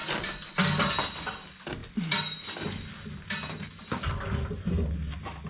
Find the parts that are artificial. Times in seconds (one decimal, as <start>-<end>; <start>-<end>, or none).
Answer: none